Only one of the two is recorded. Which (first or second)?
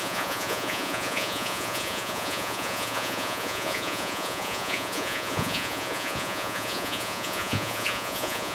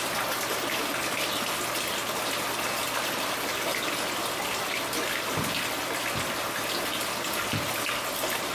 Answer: second